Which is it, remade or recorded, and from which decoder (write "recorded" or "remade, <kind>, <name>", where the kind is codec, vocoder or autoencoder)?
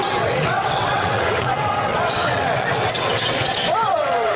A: remade, vocoder, WaveNeXt